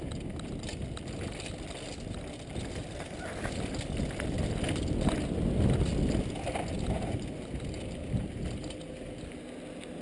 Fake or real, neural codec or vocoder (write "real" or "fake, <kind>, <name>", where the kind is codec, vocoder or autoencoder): real